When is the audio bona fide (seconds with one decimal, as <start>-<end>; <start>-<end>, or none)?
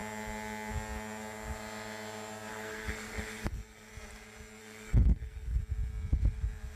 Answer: 0.0-2.5; 3.9-4.6; 5.6-6.8